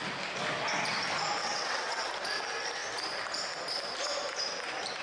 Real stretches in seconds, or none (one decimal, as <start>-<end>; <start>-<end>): 0.0-1.4; 2.1-5.0